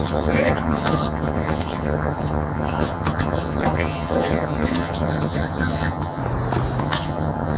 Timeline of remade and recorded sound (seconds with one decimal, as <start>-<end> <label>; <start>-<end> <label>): 0.0-6.2 remade; 6.2-6.8 recorded; 6.8-7.6 remade